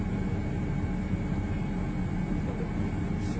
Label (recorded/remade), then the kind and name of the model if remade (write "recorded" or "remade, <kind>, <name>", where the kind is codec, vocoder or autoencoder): recorded